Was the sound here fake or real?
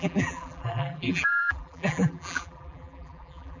fake